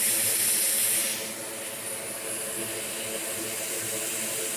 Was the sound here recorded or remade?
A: recorded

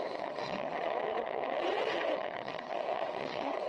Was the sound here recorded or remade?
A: remade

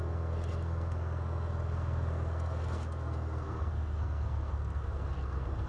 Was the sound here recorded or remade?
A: remade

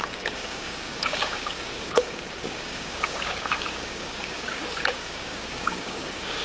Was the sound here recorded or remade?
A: remade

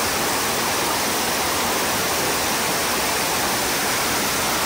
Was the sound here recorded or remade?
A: recorded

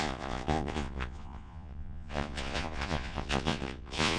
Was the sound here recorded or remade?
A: remade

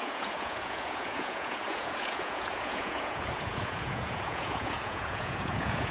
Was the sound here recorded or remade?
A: remade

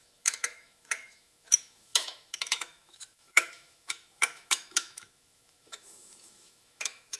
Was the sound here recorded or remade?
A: remade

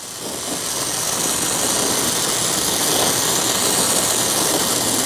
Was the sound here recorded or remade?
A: recorded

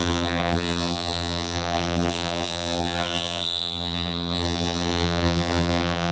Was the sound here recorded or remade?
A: remade